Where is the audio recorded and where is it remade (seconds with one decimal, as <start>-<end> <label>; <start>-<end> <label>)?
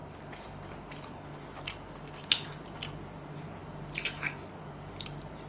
0.0-5.5 recorded